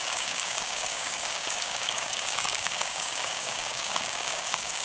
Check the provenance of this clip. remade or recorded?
remade